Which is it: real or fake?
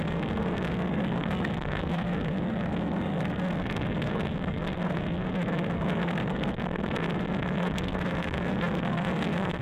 fake